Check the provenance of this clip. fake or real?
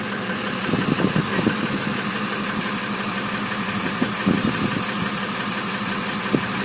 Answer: real